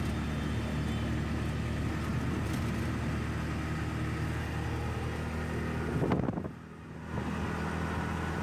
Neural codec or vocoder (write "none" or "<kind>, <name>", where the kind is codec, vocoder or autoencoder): none